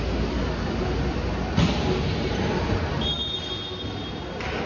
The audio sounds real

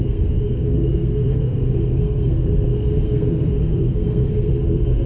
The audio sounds fake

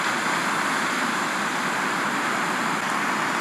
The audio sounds real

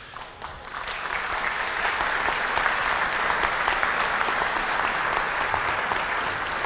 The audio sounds real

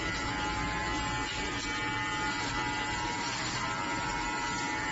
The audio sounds real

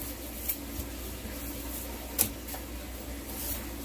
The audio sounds real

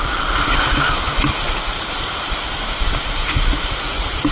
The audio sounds real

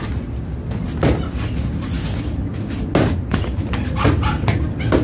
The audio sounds real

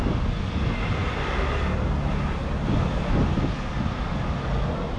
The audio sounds real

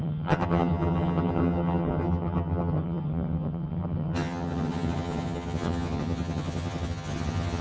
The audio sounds fake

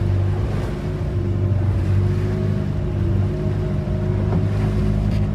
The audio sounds real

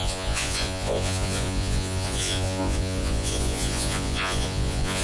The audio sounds fake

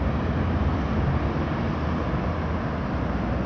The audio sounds real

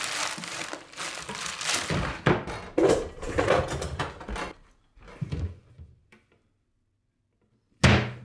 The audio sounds real